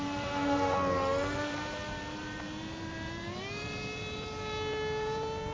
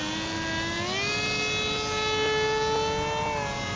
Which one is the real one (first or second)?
second